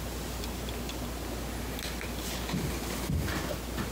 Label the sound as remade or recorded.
recorded